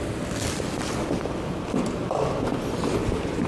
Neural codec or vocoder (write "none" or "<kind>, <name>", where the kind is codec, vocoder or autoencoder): none